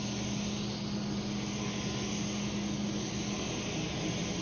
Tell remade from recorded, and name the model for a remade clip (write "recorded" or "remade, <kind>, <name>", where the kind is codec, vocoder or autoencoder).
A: recorded